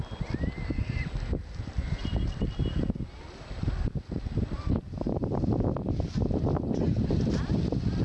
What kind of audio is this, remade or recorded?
recorded